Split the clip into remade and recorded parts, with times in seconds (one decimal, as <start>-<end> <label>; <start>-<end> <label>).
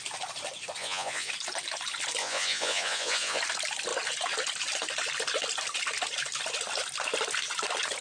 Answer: 0.0-0.8 recorded; 0.8-1.3 remade; 1.3-2.2 recorded; 2.2-3.4 remade; 3.4-8.0 recorded